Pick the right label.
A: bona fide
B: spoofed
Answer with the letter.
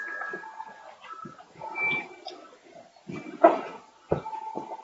A